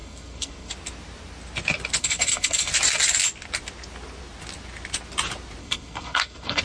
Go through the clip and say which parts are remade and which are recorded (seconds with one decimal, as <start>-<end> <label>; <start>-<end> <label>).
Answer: 0.0-0.7 remade; 0.7-2.0 recorded; 2.0-2.7 remade; 2.7-5.6 recorded; 5.6-6.6 remade

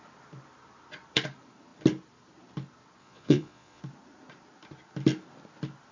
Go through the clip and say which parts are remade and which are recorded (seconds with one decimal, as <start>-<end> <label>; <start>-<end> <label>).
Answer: 0.0-3.0 recorded; 3.0-3.8 remade; 3.8-5.9 recorded